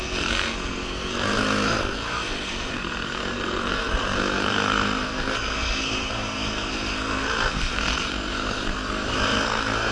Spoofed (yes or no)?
yes